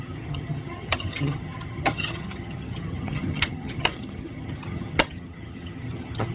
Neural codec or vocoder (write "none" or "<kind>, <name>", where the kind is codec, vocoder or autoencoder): vocoder, HiFi-GAN